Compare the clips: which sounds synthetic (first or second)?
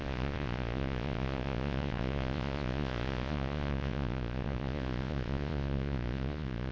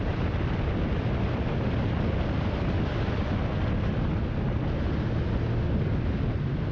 first